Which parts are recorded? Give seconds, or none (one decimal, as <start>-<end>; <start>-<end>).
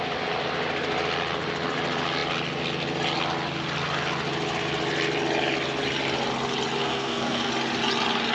0.0-6.8; 7.5-8.3